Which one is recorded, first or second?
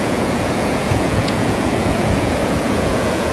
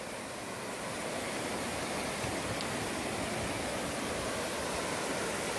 second